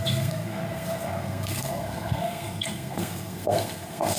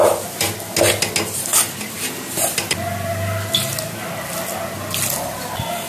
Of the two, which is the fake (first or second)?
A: first